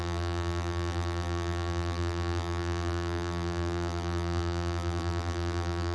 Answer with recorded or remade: remade